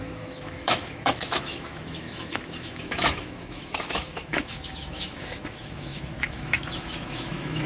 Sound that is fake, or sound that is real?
fake